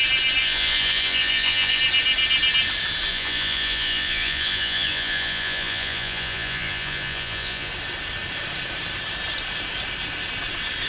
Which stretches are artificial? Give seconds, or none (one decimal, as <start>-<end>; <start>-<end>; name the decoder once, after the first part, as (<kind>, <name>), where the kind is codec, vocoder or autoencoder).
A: 0.4-1.8 (vocoder, Vocos); 3.1-7.7